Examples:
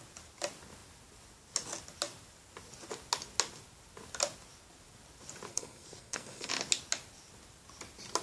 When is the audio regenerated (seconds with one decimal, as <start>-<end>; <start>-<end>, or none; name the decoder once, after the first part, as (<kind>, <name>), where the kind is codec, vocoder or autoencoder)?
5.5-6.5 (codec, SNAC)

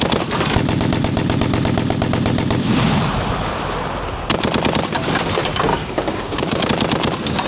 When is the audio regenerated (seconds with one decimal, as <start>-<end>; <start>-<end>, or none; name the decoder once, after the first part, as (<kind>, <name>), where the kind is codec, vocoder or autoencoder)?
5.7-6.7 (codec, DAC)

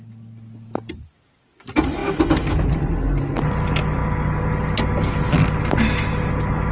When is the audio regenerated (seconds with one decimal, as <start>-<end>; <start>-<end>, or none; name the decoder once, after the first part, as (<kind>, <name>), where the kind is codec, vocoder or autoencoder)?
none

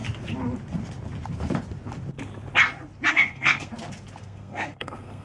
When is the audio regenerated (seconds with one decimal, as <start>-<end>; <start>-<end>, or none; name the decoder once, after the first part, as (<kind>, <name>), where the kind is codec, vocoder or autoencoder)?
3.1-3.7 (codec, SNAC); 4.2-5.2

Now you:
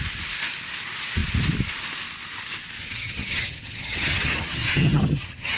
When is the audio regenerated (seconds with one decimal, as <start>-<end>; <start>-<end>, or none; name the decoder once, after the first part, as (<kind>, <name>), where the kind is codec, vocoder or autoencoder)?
2.8-5.6 (vocoder, HiFi-GAN)

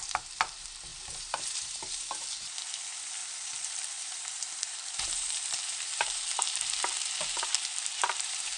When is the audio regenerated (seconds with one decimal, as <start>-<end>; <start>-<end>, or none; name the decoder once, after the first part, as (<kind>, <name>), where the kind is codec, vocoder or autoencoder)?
0.9-1.8 (vocoder, BigVGAN v2); 3.2-8.6

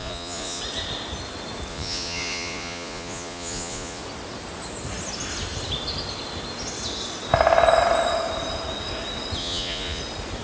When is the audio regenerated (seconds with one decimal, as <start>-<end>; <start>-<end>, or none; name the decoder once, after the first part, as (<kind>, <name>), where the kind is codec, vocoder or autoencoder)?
0.0-0.6 (vocoder, Vocos); 1.7-4.0; 9.4-10.0